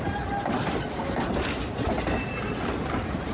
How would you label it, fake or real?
real